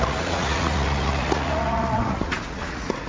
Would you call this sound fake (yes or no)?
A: yes